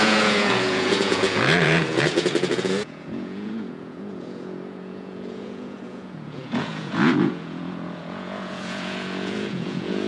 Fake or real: fake